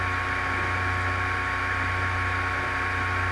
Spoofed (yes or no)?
no